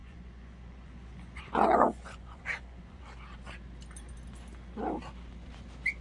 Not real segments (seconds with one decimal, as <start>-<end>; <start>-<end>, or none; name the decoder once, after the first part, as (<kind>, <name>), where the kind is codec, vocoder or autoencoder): 0.0-3.0 (vocoder, Vocos)